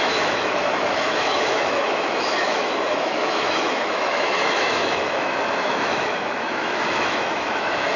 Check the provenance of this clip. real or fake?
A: fake